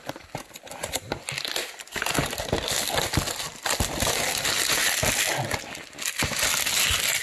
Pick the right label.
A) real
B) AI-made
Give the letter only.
A